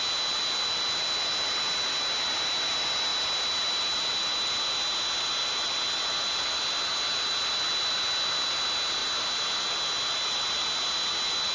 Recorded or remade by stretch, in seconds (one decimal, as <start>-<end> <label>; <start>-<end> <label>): 0.0-11.5 recorded